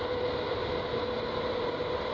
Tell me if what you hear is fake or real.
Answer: real